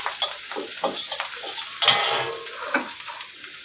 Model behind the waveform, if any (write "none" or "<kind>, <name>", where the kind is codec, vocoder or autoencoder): none